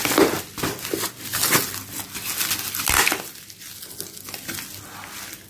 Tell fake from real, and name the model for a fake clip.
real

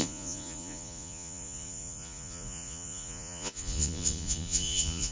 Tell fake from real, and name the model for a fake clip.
fake, vocoder, Vocos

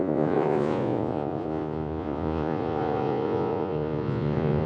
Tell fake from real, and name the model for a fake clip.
fake, vocoder, Vocos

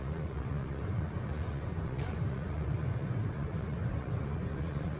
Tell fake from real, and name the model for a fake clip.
fake, vocoder, Vocos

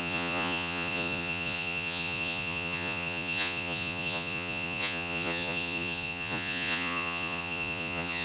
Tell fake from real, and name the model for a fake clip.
fake, vocoder, Vocos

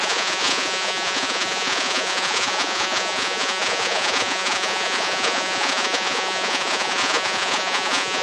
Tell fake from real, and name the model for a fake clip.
fake, vocoder, Vocos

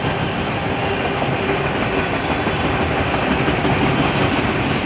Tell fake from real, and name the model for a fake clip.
real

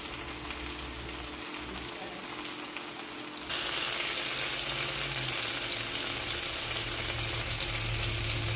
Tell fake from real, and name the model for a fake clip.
real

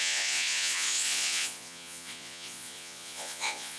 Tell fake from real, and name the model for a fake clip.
fake, vocoder, Vocos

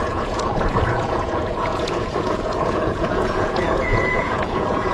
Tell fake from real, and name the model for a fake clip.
fake, vocoder, Vocos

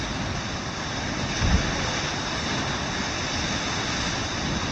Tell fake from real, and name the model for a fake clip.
real